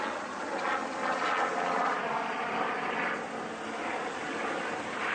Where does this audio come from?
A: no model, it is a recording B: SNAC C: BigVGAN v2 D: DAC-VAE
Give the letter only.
A